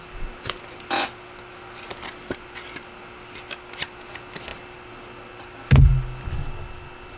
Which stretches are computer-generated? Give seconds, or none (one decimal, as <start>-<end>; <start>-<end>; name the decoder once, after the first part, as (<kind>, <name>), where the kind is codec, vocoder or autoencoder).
none